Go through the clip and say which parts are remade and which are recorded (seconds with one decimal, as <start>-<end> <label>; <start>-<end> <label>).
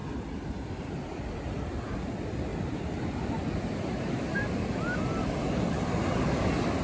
0.0-6.8 recorded